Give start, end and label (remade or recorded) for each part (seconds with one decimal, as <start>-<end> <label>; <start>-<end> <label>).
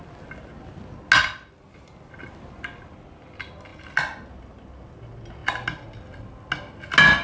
0.0-7.2 recorded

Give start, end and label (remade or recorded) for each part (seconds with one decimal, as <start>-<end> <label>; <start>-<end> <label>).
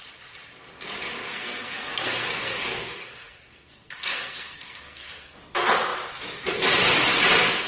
0.0-1.3 recorded; 1.3-5.4 remade; 5.4-7.7 recorded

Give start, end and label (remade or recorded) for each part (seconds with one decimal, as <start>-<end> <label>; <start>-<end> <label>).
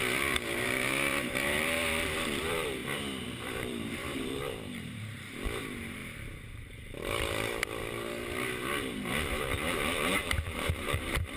0.0-2.8 remade; 2.8-3.4 recorded; 3.4-6.0 remade; 6.0-6.6 recorded; 6.6-11.4 remade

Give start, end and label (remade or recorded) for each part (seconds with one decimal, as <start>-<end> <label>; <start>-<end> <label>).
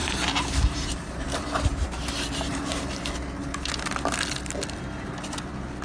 0.0-3.1 remade; 3.1-5.8 recorded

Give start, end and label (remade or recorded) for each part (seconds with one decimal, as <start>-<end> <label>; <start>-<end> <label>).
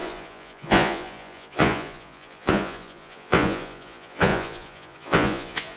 0.0-5.8 remade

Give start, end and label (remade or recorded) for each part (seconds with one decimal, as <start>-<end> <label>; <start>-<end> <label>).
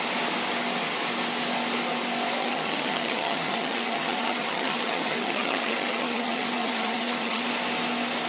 0.0-2.4 recorded; 2.4-7.4 remade; 7.4-8.3 recorded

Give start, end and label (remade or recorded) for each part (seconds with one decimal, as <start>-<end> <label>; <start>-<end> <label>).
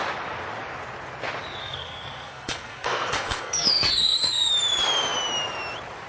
0.0-1.6 recorded; 1.6-4.5 remade; 4.5-6.1 recorded